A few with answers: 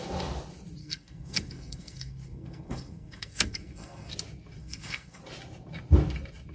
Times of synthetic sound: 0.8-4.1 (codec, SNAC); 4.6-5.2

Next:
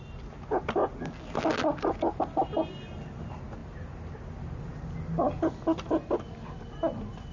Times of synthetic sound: none

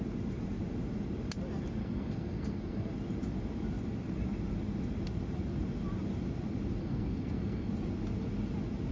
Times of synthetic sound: 1.8-2.9 (codec, SNAC); 6.8-7.7

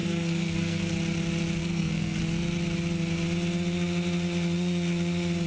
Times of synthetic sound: 0.0-0.9 (codec, SNAC); 1.6-2.2

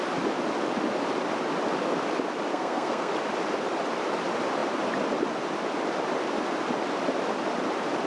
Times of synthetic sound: 2.5-3.1 (codec, SNAC)

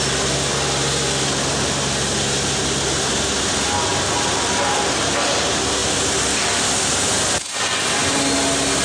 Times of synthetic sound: none

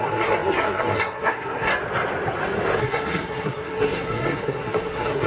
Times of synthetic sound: 0.0-1.7 (codec, SNAC); 2.8-5.3